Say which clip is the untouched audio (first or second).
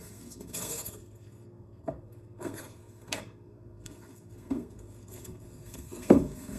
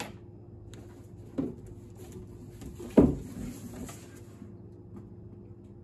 second